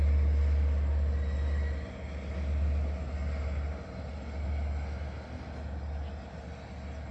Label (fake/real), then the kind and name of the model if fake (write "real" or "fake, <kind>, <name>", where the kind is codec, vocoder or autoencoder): real